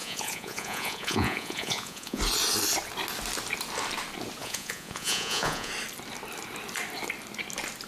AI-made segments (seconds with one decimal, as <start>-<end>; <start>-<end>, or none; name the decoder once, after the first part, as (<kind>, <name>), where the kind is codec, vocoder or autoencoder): 0.0-2.2 (vocoder, Vocos); 4.4-5.7